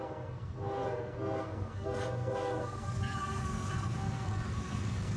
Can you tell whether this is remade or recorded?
remade